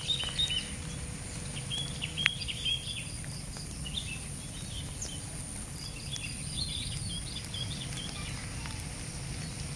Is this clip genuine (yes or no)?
yes